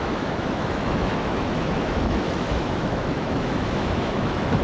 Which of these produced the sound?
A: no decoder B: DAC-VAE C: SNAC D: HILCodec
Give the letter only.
B